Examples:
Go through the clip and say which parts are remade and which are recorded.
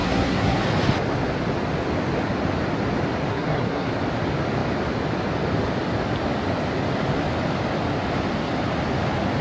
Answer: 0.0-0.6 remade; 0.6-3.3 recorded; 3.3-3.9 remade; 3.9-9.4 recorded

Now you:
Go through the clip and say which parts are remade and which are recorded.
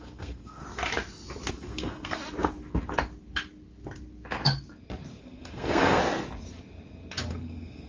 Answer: 0.0-0.6 remade; 0.6-1.5 recorded; 1.5-2.2 remade; 2.2-5.2 recorded; 5.2-6.0 remade; 6.0-7.3 recorded; 7.3-7.9 remade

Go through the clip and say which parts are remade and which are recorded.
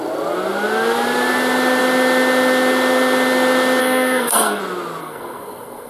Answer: 0.0-3.8 recorded; 3.8-4.6 remade; 4.6-5.0 recorded; 5.0-5.9 remade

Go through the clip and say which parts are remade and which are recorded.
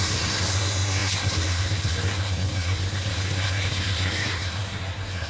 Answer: 0.0-5.3 remade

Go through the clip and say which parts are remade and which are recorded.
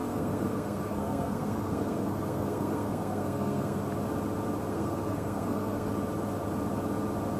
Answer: 0.0-3.8 remade; 3.8-4.7 recorded; 4.7-5.9 remade; 5.9-7.4 recorded